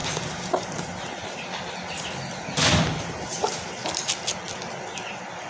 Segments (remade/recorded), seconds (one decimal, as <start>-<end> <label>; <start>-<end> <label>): 0.0-1.7 remade; 1.7-3.3 recorded; 3.3-4.2 remade; 4.2-5.5 recorded